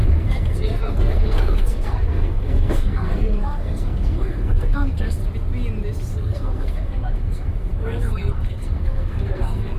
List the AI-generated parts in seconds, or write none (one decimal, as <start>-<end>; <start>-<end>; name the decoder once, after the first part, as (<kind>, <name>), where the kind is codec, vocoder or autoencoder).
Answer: 0.0-5.2 (codec, SNAC); 6.1-9.8